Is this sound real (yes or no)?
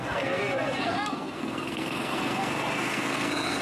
no